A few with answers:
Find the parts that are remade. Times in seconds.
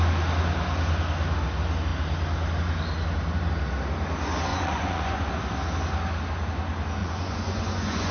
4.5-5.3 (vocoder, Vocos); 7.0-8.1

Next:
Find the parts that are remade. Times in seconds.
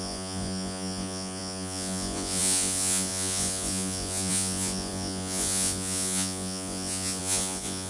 0.0-7.9 (vocoder, Vocos)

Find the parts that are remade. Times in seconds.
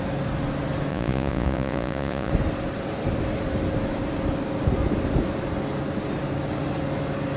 0.9-2.3 (vocoder, Vocos)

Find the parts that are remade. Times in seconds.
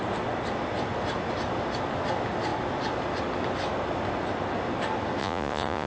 5.2-5.9 (vocoder, Vocos)